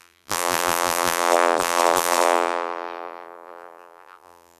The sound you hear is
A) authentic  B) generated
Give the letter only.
B